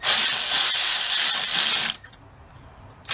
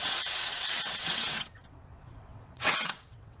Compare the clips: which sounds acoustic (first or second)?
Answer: first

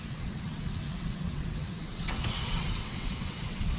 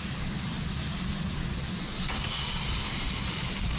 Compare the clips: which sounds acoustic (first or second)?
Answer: second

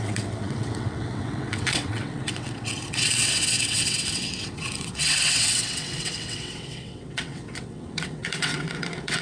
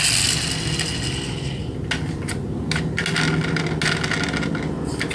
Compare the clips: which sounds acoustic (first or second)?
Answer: second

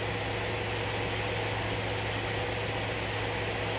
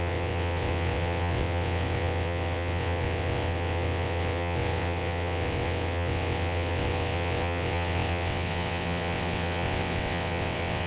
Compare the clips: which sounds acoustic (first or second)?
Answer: first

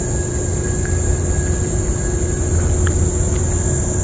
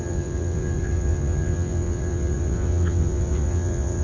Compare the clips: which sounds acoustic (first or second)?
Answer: first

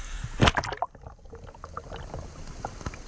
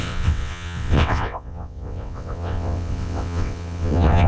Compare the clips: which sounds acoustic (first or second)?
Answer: first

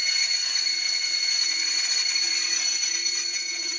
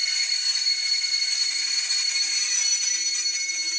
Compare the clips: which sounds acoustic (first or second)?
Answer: second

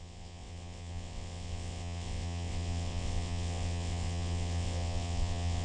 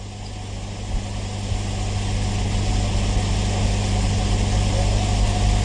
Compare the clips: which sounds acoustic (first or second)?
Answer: second